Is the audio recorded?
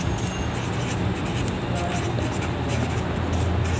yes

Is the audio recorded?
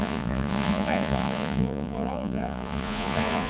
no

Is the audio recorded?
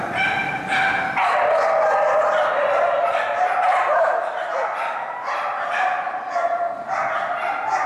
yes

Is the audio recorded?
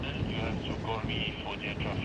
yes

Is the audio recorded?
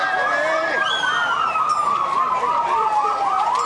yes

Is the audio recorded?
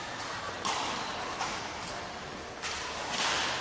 yes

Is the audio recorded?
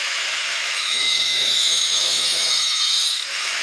no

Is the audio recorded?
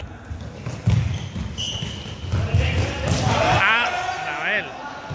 yes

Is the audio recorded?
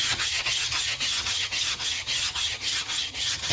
no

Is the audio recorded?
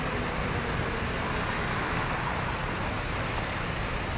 yes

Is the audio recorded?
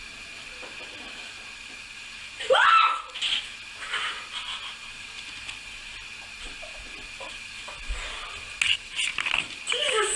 yes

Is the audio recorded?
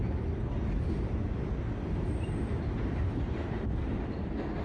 yes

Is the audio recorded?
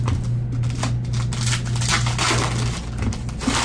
yes